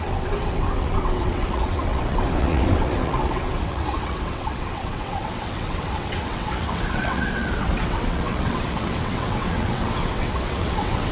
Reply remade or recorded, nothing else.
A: remade